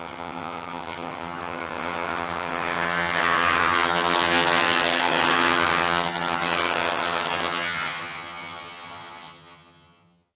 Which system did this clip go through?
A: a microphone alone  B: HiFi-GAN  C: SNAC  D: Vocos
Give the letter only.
B